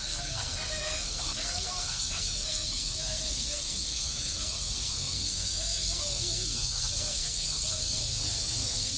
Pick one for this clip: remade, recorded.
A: remade